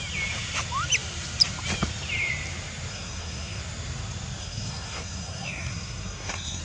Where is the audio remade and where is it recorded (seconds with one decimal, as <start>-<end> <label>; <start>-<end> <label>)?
0.0-2.9 recorded; 2.9-3.6 remade; 3.6-4.4 recorded; 4.4-6.6 remade